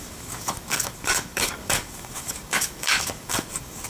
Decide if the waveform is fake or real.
fake